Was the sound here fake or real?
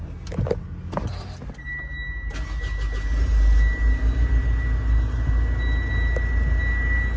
real